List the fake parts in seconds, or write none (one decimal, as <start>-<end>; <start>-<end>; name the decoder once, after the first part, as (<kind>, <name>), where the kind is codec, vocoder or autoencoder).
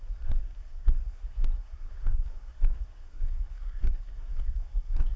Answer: 0.0-5.2 (codec, SNAC)